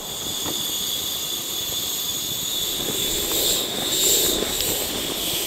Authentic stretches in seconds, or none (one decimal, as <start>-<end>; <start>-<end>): 0.0-5.5